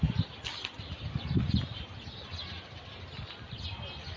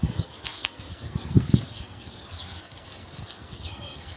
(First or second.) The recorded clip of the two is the first